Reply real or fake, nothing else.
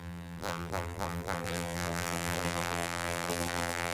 fake